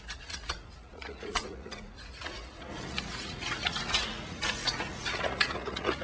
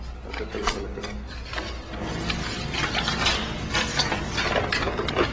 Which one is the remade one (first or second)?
first